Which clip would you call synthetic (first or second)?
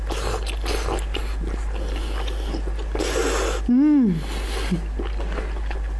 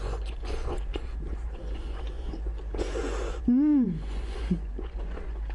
second